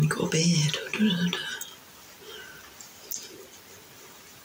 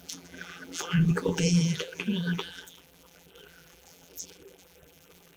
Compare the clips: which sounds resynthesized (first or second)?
second